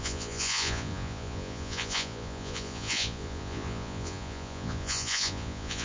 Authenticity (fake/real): fake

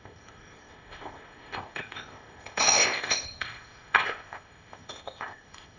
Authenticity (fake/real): fake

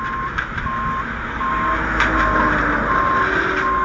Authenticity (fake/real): real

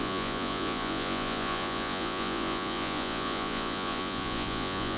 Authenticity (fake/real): fake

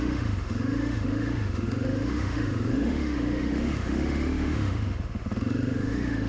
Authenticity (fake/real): fake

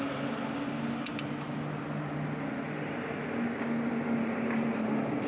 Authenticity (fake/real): real